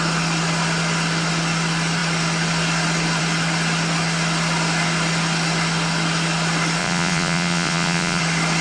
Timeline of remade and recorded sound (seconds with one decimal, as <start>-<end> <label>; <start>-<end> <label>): 0.0-6.8 recorded; 6.8-8.2 remade; 8.2-8.6 recorded